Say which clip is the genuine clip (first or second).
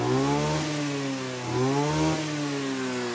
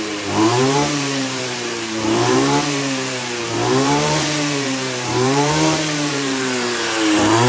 first